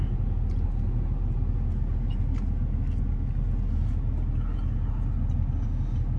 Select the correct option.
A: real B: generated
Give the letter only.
A